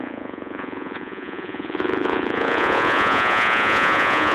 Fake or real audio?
fake